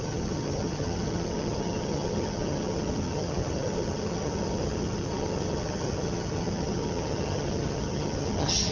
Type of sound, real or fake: fake